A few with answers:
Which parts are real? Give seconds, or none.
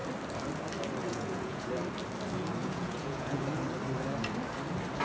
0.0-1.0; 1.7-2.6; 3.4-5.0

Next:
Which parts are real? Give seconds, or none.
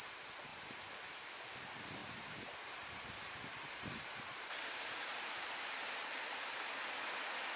0.0-2.0; 3.1-3.5; 6.5-7.6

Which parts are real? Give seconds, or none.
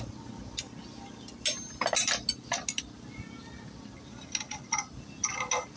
0.0-5.8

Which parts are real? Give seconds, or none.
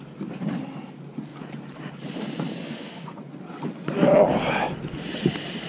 0.0-2.6; 3.2-5.7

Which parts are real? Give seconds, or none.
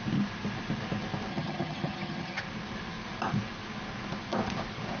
0.0-1.3; 2.4-5.0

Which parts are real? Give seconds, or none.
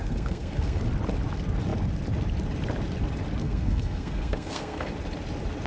0.8-3.4; 4.9-5.7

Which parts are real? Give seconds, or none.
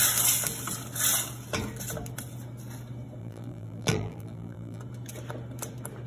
0.0-3.2; 4.8-6.1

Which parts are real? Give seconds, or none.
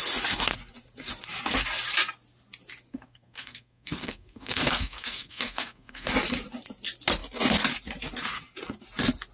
0.0-2.9; 6.1-9.3